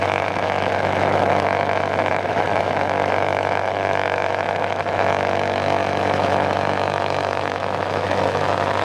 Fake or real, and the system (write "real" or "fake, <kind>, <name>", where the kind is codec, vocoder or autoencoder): fake, autoencoder, DAC-VAE